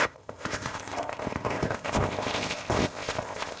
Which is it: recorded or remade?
remade